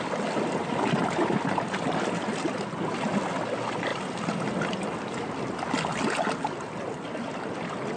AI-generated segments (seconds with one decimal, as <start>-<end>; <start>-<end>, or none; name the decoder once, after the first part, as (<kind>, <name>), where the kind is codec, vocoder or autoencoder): none